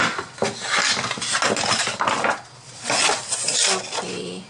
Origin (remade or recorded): recorded